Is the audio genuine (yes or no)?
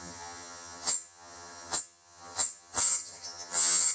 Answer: no